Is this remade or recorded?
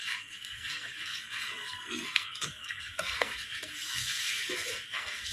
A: remade